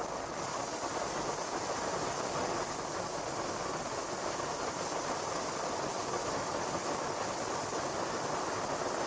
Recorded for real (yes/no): yes